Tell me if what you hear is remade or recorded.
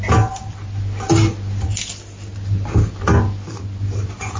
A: recorded